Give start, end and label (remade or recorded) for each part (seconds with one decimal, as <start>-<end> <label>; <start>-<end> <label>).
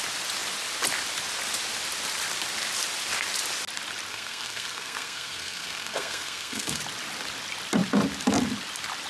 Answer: 0.0-4.1 recorded; 4.1-6.8 remade; 6.8-9.1 recorded